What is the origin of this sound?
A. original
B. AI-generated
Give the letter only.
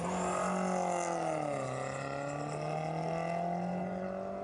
A